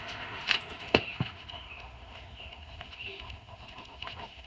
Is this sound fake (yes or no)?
yes